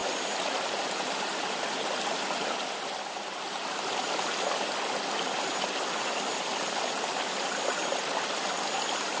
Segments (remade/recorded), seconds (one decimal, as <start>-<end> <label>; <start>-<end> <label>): 0.0-9.2 recorded